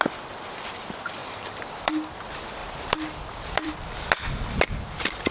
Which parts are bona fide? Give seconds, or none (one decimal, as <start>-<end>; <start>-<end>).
0.0-1.2; 2.1-2.6; 3.7-5.3